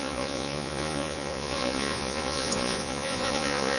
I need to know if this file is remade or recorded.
remade